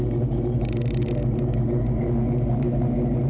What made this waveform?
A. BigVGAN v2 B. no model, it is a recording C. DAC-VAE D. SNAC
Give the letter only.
B